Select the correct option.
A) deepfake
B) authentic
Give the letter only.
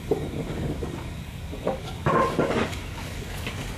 A